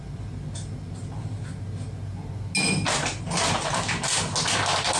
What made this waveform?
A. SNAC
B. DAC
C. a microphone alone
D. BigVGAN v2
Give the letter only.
C